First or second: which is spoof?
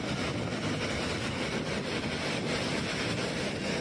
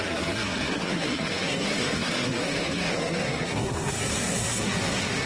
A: second